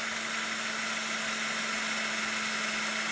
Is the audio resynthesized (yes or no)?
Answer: no